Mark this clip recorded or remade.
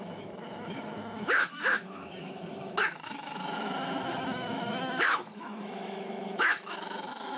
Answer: remade